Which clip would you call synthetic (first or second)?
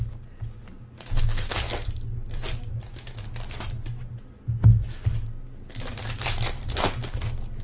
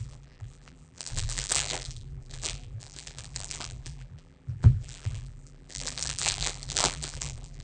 second